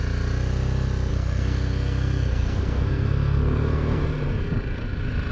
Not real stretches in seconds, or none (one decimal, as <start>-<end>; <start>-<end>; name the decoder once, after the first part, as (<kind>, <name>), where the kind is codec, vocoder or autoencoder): 1.1-4.0 (codec, SNAC)